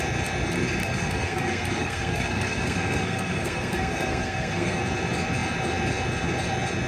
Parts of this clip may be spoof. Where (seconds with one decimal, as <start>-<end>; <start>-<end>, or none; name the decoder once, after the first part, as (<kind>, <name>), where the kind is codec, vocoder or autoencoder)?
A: 0.8-4.8 (codec, SNAC)